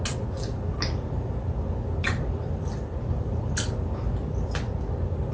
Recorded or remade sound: recorded